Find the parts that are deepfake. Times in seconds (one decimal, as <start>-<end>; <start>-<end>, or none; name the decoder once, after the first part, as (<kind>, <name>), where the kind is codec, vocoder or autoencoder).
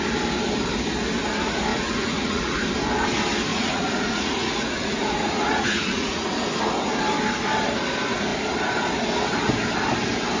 1.7-2.6 (vocoder, Vocos); 3.5-6.3